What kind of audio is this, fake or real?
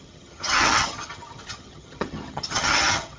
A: fake